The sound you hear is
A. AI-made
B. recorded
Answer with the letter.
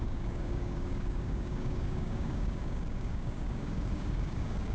A